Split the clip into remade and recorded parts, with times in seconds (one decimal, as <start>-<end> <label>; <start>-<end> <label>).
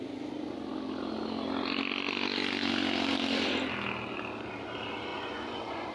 0.0-5.1 recorded; 5.1-5.9 remade